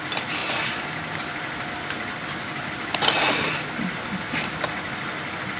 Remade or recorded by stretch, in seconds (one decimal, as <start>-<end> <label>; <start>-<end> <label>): 0.0-5.6 recorded